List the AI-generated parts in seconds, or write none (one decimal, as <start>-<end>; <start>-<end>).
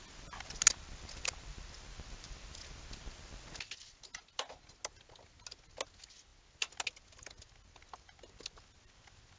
none